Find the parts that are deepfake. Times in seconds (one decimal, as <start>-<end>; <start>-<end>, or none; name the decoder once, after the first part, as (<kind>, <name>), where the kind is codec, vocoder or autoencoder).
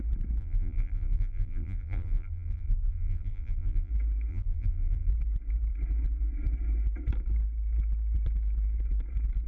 0.4-3.9 (vocoder, BigVGAN v2); 4.3-5.1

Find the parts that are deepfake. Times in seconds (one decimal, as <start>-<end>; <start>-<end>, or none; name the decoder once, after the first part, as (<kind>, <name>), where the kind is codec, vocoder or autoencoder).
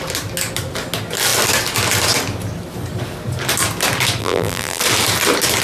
4.2-4.8 (vocoder, BigVGAN v2)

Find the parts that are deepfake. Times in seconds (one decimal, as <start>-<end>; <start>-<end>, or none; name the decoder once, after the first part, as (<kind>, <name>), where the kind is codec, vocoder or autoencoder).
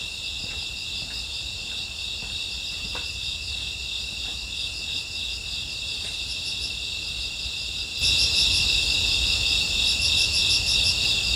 2.9-3.9 (vocoder, BigVGAN v2)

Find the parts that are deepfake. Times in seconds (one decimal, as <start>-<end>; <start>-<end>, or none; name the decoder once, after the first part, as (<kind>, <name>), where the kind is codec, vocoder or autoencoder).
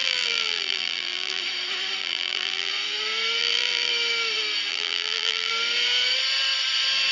0.0-1.4 (vocoder, BigVGAN v2); 2.0-2.7; 3.4-3.9; 4.7-5.5